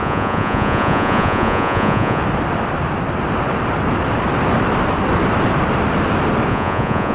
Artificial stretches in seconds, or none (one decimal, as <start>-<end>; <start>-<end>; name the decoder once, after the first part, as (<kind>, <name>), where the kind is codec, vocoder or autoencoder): 0.0-2.2 (vocoder, Vocos); 6.5-7.1